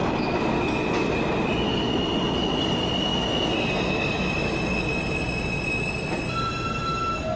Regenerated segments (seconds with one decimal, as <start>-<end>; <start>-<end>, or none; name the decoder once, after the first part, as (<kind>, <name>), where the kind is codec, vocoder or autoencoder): none